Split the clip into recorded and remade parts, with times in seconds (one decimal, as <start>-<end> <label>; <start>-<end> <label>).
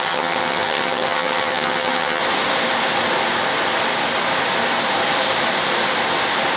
0.0-2.2 remade; 2.2-6.6 recorded